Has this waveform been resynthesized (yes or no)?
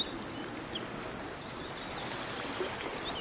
no